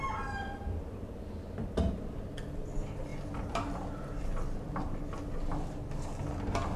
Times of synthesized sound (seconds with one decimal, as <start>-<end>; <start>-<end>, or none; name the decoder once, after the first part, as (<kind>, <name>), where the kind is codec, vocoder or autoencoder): none